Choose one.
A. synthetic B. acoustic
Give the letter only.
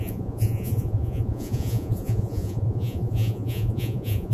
A